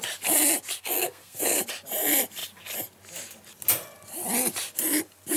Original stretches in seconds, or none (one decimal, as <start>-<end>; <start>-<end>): 0.0-0.8; 1.6-5.4